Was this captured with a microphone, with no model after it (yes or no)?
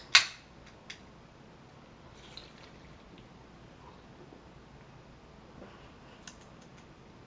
yes